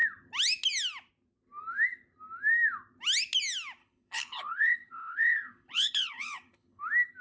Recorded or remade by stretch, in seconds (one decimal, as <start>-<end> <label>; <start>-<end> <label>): 0.0-3.8 recorded; 3.8-6.8 remade; 6.8-7.2 recorded